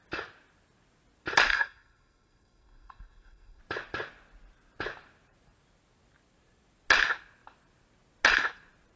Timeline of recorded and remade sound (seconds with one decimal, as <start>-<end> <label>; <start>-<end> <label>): 0.0-1.5 recorded; 1.5-3.6 remade; 3.6-9.0 recorded